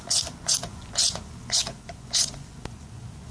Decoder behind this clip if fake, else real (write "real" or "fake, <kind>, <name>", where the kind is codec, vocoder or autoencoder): fake, vocoder, Vocos